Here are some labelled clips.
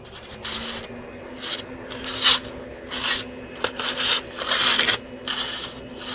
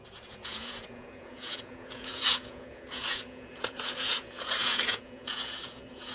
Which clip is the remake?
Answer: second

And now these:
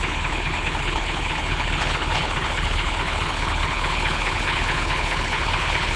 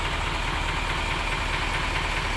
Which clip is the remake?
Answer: first